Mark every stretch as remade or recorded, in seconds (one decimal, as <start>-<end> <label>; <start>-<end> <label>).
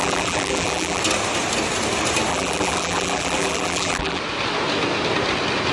0.0-1.0 remade; 1.0-2.3 recorded; 2.3-4.2 remade; 4.2-5.7 recorded